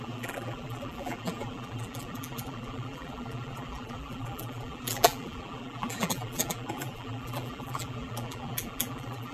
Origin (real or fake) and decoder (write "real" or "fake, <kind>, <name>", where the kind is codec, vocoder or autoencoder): fake, vocoder, BigVGAN v2